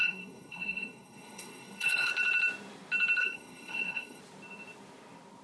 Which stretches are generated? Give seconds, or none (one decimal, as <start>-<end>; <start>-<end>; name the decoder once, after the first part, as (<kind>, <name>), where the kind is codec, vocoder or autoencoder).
0.0-2.1 (codec, SNAC); 3.2-4.2